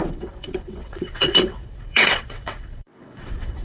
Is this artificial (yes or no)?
yes